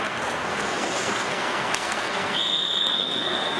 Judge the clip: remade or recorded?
remade